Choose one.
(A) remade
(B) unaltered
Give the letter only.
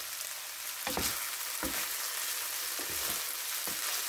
B